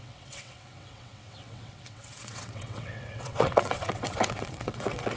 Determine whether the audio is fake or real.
fake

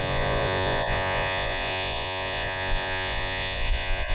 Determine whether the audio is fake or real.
fake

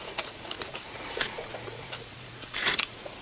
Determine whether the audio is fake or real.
fake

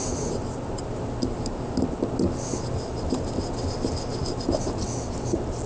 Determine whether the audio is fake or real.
real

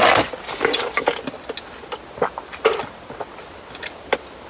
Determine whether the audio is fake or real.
real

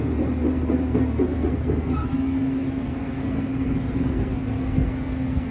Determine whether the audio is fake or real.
fake